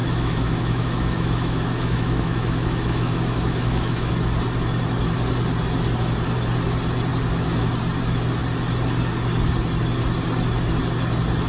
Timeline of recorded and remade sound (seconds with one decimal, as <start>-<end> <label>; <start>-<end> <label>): 0.0-4.1 remade; 4.1-11.5 recorded